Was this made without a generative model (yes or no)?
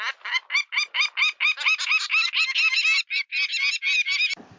yes